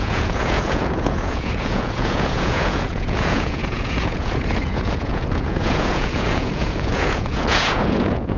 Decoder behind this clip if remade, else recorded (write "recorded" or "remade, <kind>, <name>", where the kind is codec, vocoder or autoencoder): remade, vocoder, Vocos